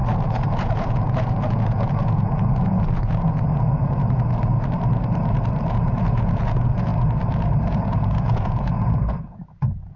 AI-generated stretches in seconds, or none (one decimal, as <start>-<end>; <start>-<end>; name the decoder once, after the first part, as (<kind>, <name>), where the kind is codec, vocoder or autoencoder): 0.0-4.5 (vocoder, Vocos); 5.7-6.9; 7.7-10.0